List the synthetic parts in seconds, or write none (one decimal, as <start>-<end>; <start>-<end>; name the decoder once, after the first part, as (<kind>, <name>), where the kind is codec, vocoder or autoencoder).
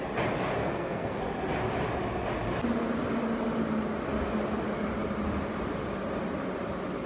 0.6-1.2 (codec, SNAC)